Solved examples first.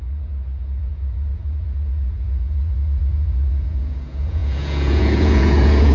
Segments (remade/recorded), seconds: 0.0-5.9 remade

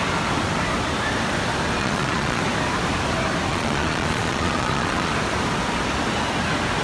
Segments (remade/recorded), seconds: 0.0-1.8 recorded; 1.8-2.4 remade; 2.4-3.5 recorded; 3.5-5.1 remade; 5.1-6.8 recorded

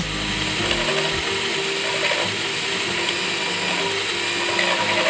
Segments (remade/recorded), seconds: 0.0-5.1 recorded

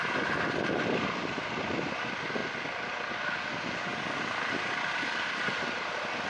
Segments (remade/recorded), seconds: 0.0-6.3 recorded

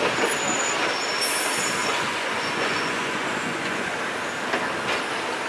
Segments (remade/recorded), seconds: 0.0-1.8 recorded; 1.8-4.0 remade; 4.0-5.5 recorded

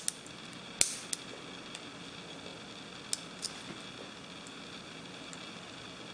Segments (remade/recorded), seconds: 0.0-6.1 recorded

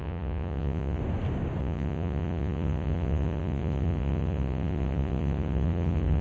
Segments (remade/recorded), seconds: 0.0-1.0 remade; 1.0-1.6 recorded; 1.6-6.2 remade